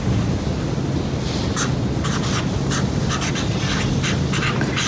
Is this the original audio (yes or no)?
yes